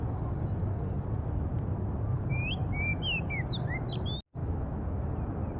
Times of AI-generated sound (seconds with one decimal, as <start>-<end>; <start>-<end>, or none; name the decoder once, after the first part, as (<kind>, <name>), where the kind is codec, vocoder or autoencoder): 4.4-5.0 (autoencoder, DAC-VAE)